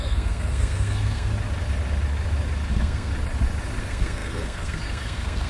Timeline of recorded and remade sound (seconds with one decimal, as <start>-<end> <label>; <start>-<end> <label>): 0.0-1.3 remade; 1.3-2.7 recorded; 2.7-3.1 remade; 3.1-3.8 recorded; 3.8-5.5 remade